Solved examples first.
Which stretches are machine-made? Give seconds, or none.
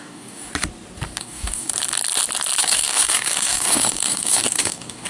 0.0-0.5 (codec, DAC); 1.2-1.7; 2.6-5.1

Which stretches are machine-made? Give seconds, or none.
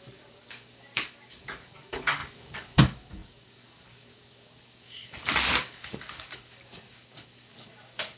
0.0-8.2 (codec, DAC)